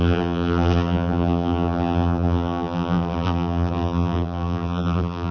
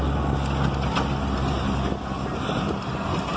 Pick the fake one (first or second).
first